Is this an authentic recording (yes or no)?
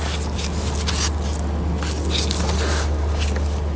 yes